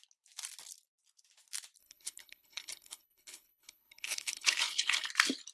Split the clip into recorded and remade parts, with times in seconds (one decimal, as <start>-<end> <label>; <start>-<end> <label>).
0.0-1.8 recorded; 1.8-5.1 remade; 5.1-5.5 recorded